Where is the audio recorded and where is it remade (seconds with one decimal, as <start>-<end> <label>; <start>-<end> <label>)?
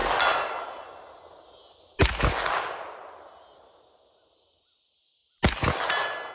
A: 0.0-6.3 recorded